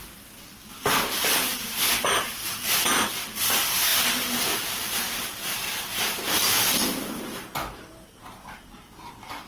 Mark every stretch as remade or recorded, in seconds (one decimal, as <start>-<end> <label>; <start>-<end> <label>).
0.0-1.5 recorded; 1.5-2.0 remade; 2.0-9.5 recorded